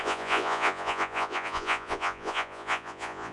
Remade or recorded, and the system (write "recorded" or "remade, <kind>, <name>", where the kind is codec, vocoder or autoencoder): remade, vocoder, Vocos